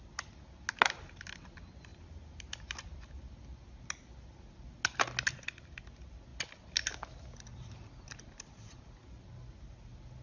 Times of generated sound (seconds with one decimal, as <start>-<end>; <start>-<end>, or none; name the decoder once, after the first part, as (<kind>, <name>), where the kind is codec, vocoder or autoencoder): 6.3-7.0 (vocoder, BigVGAN v2); 7.5-8.8